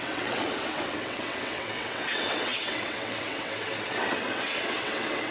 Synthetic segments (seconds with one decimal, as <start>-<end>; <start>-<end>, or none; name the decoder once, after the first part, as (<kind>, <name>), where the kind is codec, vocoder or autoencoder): 0.0-5.3 (vocoder, WaveNeXt)